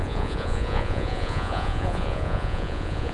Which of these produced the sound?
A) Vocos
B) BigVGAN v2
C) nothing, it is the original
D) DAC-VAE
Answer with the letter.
A